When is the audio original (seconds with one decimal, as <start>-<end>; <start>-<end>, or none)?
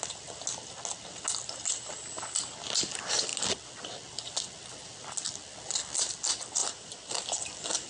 0.0-6.6; 7.3-7.9